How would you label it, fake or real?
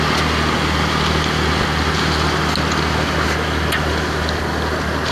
real